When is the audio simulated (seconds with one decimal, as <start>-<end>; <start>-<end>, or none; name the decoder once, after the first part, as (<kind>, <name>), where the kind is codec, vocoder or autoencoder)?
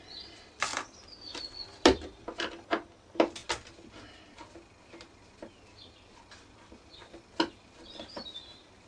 none